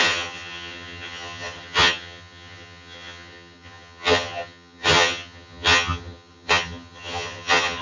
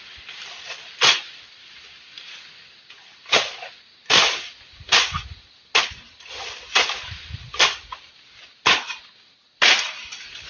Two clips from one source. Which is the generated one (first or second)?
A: first